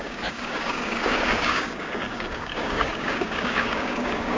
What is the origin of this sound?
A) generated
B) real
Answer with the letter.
A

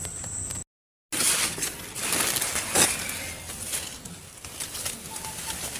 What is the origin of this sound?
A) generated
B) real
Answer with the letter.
B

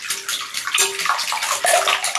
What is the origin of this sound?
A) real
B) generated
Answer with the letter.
A